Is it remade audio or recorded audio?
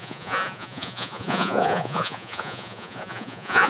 remade